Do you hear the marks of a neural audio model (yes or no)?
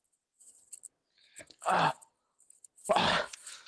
no